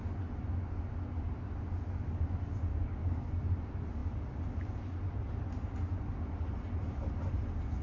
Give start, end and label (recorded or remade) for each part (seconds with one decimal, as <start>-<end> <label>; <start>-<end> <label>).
0.0-2.7 recorded; 2.7-3.3 remade; 3.3-7.8 recorded